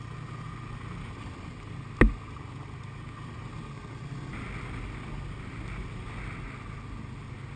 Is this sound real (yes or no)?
yes